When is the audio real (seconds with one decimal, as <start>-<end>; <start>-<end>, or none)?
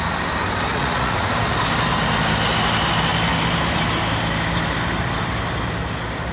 0.0-0.7; 1.3-6.3